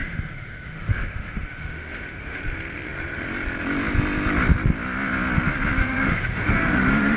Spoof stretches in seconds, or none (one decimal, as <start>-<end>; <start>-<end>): 0.0-2.4; 5.8-7.2